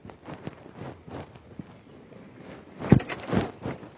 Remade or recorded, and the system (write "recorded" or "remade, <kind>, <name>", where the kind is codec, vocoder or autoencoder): recorded